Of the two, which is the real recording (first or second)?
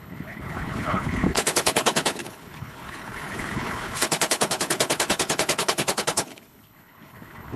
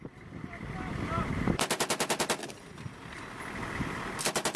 second